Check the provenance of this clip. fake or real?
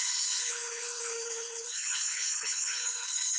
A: fake